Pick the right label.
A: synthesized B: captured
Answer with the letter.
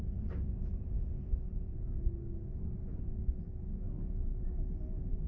B